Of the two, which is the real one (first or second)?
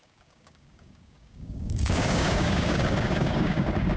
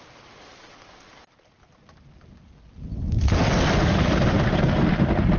second